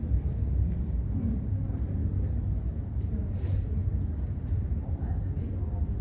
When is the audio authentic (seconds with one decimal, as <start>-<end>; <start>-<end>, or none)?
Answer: 0.0-6.0